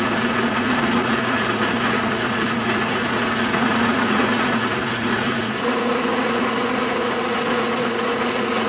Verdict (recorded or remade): remade